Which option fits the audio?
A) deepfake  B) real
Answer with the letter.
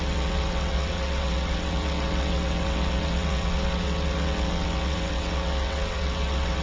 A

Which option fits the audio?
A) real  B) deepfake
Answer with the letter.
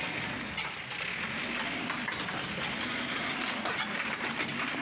A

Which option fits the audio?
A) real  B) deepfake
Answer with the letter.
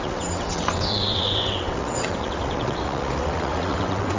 B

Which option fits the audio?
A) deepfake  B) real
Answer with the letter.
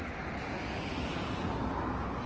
B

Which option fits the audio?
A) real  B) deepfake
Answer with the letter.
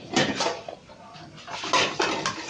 A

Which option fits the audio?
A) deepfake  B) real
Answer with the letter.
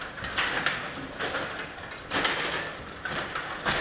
B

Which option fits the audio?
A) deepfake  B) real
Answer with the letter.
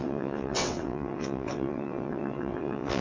A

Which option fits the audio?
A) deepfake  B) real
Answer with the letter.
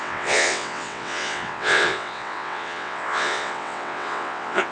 A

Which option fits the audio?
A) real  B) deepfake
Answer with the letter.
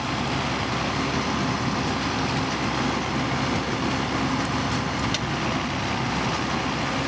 A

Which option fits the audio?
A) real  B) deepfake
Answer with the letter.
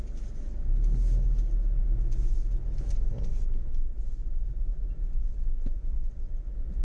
A